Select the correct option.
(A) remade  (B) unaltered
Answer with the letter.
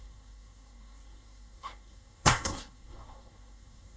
A